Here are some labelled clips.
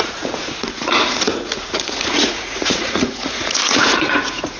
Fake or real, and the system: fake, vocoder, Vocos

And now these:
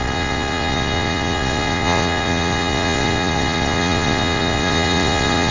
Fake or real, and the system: fake, vocoder, Vocos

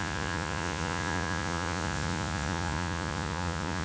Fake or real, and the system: fake, vocoder, Vocos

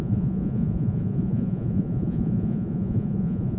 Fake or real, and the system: fake, vocoder, Vocos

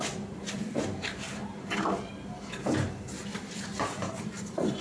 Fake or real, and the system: real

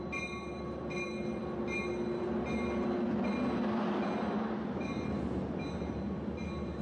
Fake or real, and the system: real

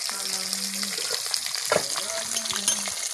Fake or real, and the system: real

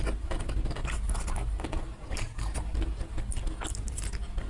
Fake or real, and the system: real